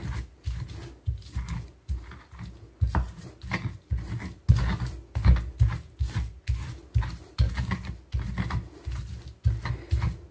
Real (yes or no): yes